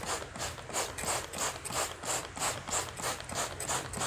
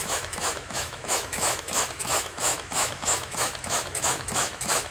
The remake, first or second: second